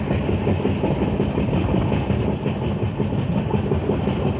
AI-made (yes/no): no